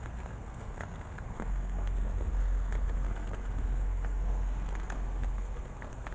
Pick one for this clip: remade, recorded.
remade